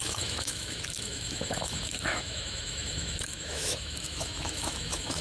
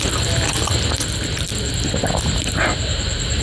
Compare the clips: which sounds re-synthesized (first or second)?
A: first